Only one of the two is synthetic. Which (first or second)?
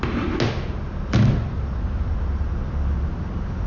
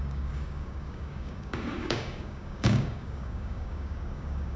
second